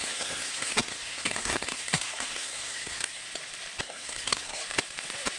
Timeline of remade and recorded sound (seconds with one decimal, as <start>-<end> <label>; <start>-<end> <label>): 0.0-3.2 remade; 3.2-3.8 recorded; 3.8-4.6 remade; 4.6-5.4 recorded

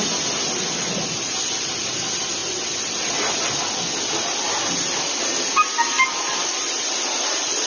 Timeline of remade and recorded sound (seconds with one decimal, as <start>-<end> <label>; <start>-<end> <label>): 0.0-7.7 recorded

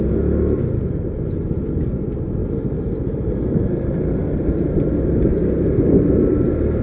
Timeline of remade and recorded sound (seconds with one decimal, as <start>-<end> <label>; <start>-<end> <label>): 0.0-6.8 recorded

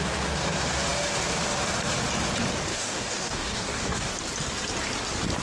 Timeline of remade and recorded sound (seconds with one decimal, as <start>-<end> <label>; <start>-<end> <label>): 0.0-2.7 recorded; 2.7-4.1 remade; 4.1-5.4 recorded

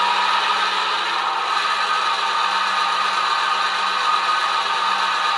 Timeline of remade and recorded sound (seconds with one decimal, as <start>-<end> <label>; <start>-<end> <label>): 0.0-5.4 recorded

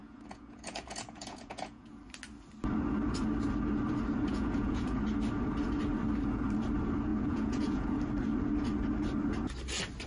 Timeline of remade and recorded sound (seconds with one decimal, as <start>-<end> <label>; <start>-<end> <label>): 0.0-2.0 remade; 2.0-4.3 recorded; 4.3-5.0 remade; 5.0-7.1 recorded; 7.1-8.0 remade; 8.0-10.1 recorded